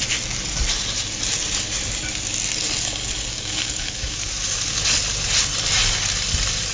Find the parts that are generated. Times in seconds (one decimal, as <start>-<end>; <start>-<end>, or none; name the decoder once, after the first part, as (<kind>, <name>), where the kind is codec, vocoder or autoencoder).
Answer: 3.3-4.3 (codec, DAC)